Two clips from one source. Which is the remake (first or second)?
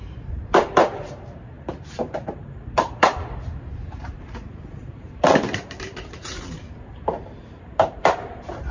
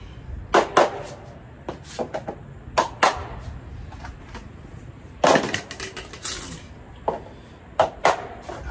first